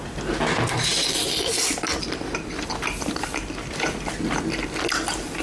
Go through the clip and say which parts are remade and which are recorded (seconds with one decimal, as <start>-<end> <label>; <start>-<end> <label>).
0.0-5.4 recorded

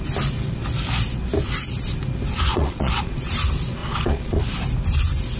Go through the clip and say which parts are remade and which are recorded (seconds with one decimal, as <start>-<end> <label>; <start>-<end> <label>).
0.0-2.5 recorded; 2.5-3.3 remade; 3.3-3.8 recorded; 3.8-4.4 remade; 4.4-5.4 recorded

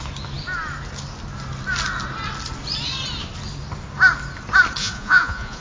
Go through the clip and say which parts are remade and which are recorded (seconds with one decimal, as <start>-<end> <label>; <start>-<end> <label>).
0.0-4.8 recorded; 4.8-5.6 remade

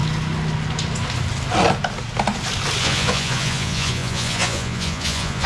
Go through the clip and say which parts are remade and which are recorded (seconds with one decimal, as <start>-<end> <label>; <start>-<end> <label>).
0.0-2.8 recorded; 2.8-5.5 remade

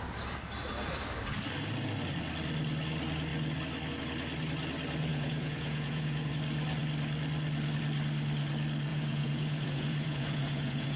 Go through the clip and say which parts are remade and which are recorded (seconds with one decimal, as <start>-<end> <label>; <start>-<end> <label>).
0.0-5.1 recorded; 5.1-6.3 remade; 6.3-8.9 recorded; 8.9-11.0 remade